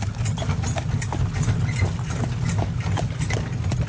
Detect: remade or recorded recorded